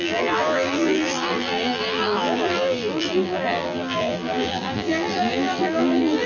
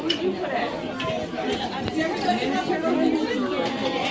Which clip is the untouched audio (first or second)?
second